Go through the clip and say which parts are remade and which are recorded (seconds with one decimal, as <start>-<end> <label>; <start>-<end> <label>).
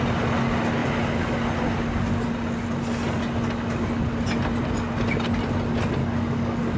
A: 0.0-6.0 recorded; 6.0-6.8 remade